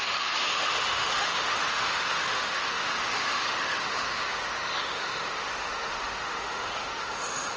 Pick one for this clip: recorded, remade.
remade